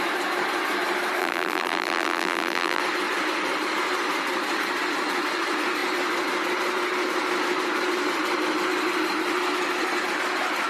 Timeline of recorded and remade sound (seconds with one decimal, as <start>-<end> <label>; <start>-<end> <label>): 0.0-1.2 recorded; 1.2-2.8 remade; 2.8-10.7 recorded